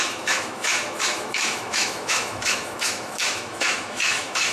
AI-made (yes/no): yes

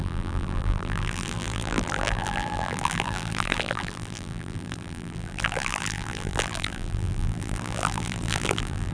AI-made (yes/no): yes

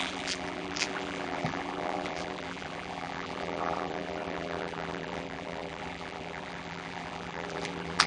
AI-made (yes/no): yes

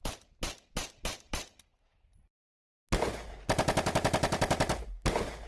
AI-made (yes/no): no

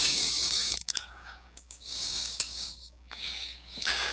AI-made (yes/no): yes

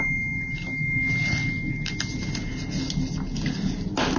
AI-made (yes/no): no